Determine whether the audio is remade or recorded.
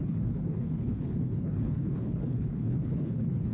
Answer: remade